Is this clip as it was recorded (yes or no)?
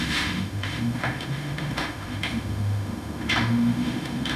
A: no